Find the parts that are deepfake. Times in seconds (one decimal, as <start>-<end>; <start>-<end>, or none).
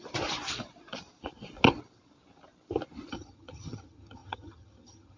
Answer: 3.1-5.2